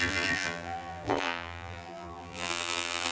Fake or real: fake